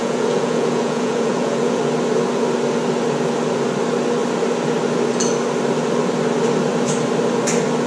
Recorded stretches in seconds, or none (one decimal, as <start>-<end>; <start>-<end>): 1.8-7.9